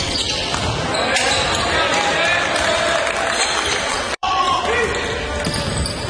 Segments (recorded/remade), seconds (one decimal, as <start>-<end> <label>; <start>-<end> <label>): 0.0-0.5 remade; 0.5-3.9 recorded; 3.9-4.6 remade; 4.6-6.1 recorded